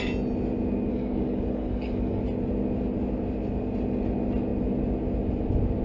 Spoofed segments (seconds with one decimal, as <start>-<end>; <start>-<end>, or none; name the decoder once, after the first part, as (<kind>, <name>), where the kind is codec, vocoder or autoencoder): 0.9-2.2 (codec, DAC)